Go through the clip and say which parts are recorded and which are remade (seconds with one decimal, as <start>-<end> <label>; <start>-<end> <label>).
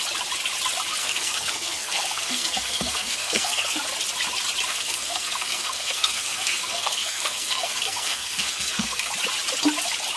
0.0-1.0 recorded; 1.0-3.8 remade; 3.8-4.7 recorded; 4.7-9.1 remade; 9.1-10.2 recorded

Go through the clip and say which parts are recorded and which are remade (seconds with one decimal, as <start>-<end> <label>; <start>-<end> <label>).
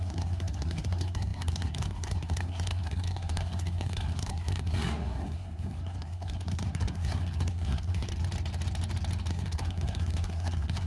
0.0-8.1 remade; 8.1-9.3 recorded; 9.3-10.9 remade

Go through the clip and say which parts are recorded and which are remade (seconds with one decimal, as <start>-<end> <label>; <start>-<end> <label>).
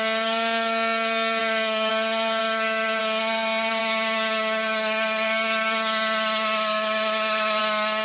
0.0-1.4 recorded; 1.4-1.9 remade; 1.9-2.4 recorded; 2.4-3.0 remade; 3.0-3.8 recorded; 3.8-7.6 remade; 7.6-8.0 recorded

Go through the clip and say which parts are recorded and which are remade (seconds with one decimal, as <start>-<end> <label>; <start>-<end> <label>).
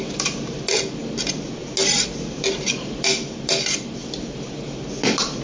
0.0-5.4 recorded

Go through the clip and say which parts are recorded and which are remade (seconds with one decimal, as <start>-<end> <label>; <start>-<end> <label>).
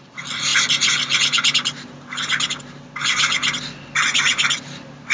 0.0-5.1 recorded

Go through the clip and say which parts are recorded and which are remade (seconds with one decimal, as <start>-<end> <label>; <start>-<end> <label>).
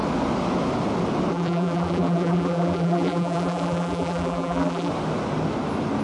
0.0-1.3 recorded; 1.3-4.9 remade; 4.9-6.0 recorded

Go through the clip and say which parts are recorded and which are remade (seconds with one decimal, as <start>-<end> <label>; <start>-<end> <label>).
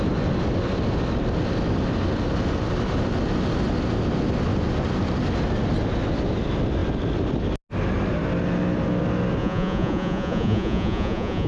0.0-9.4 recorded; 9.4-11.5 remade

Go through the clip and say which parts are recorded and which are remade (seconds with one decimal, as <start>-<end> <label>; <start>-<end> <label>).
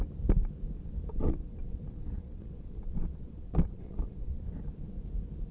0.0-1.1 recorded; 1.1-4.4 remade; 4.4-5.5 recorded